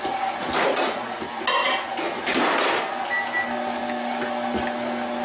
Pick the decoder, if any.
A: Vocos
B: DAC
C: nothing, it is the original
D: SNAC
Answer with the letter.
C